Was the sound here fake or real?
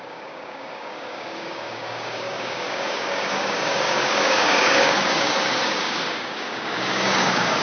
fake